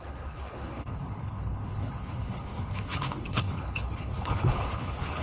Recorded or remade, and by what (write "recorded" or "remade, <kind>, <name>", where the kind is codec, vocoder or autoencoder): remade, codec, HILCodec